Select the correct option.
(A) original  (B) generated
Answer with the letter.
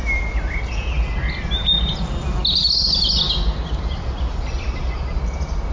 A